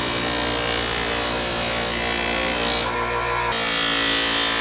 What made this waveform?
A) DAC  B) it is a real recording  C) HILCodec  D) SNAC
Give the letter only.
B